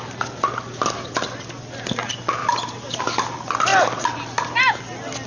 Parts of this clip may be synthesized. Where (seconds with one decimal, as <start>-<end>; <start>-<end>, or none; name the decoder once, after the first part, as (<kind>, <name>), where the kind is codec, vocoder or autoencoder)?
none